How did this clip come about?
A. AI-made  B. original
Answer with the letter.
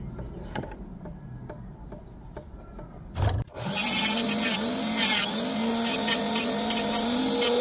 B